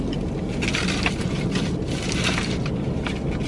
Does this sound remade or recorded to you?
recorded